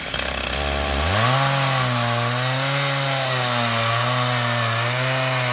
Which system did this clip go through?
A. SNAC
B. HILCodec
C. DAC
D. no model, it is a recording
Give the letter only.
D